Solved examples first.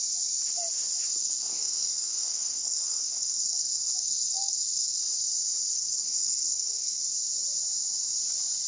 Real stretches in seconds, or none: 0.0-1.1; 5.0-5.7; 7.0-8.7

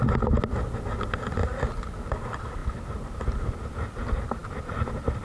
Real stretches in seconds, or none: 0.0-5.2

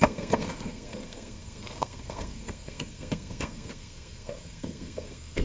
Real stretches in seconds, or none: none

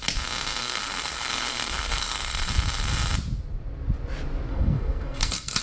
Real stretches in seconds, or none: 0.0-0.6; 2.5-4.5

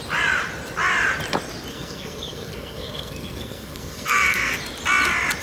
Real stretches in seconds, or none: 0.0-1.7; 4.6-5.4

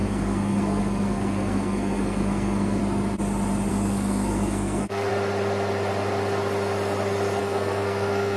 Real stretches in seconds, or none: 2.8-3.7; 5.1-7.4

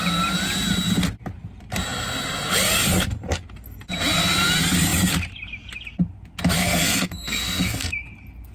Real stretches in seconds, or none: 0.0-6.6; 7.9-8.5

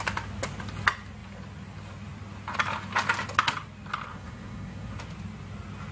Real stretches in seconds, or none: 0.0-4.1; 5.0-5.9